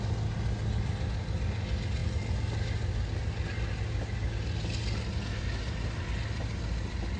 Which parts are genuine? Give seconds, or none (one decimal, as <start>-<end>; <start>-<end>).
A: 0.0-7.2

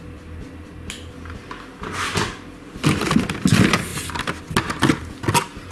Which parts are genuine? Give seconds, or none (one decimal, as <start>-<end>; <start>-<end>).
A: 0.0-5.7

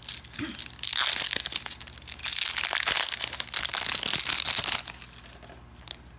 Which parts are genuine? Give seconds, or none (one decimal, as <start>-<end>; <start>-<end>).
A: 0.0-6.2